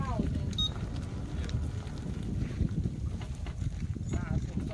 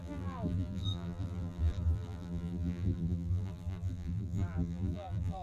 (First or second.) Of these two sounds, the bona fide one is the first